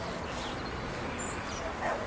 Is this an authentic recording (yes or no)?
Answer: yes